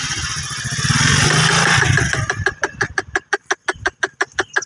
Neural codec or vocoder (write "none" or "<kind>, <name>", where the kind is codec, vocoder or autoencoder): none